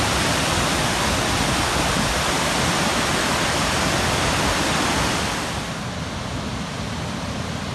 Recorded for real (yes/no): yes